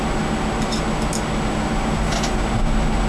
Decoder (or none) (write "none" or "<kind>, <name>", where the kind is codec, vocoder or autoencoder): none